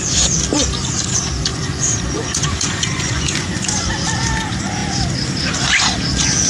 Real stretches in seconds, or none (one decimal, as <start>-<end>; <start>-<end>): 0.0-1.5; 3.9-6.5